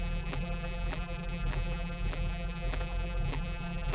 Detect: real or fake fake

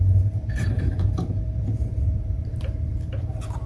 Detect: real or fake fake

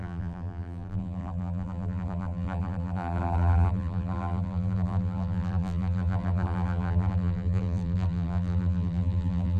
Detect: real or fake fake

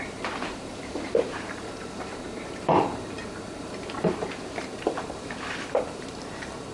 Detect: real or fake fake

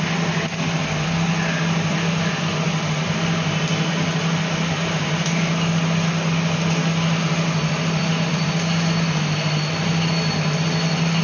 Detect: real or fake real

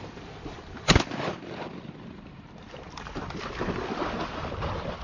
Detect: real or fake fake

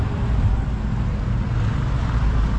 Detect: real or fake real